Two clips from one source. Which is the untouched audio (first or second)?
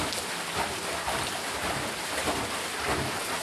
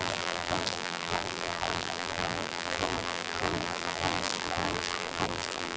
first